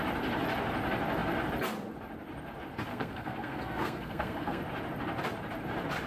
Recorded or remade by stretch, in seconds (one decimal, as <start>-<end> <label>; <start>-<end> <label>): 0.0-2.9 recorded; 2.9-4.6 remade; 4.6-6.1 recorded